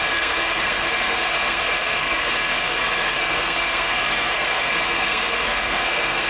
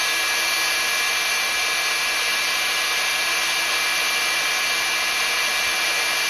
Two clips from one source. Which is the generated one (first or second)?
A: first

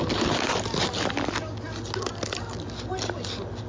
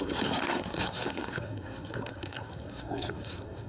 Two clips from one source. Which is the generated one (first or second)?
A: second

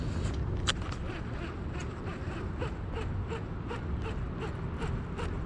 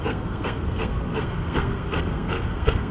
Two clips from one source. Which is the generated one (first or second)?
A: second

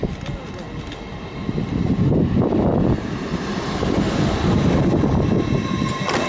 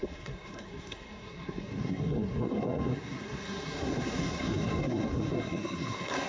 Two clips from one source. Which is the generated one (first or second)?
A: second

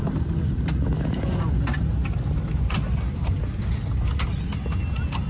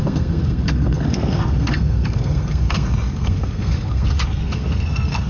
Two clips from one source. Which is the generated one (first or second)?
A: second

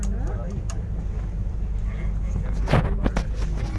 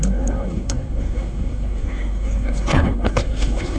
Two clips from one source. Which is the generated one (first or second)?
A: second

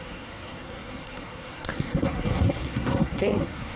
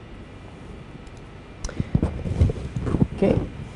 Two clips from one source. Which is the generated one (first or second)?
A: first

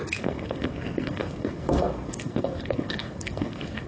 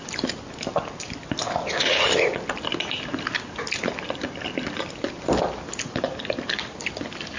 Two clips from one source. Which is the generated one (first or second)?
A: first